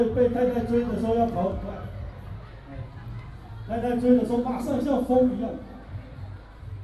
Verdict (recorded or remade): recorded